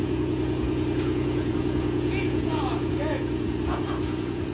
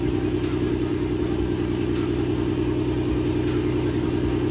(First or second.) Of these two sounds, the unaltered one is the second